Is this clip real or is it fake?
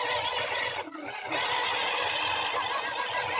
real